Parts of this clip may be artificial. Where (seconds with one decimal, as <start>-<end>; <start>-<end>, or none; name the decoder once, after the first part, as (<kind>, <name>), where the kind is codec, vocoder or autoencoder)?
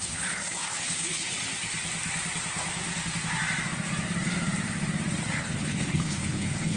0.0-1.3 (codec, HILCodec); 5.4-6.8